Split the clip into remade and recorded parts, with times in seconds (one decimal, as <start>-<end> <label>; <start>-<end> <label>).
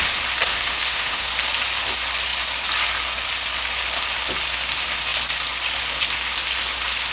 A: 0.0-0.5 recorded; 0.5-1.3 remade; 1.3-7.1 recorded